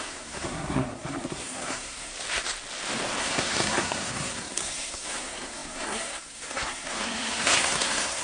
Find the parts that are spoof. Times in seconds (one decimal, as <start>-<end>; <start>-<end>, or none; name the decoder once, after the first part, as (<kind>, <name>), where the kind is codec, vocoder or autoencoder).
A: 0.0-2.1 (codec, SNAC); 3.2-8.2